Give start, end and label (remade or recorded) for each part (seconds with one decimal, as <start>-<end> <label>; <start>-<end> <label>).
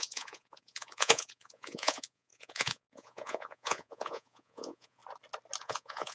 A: 0.0-5.0 remade; 5.0-5.6 recorded; 5.6-6.1 remade